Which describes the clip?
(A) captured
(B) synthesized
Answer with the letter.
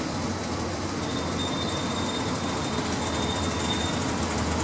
A